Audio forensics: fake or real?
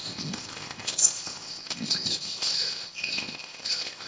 fake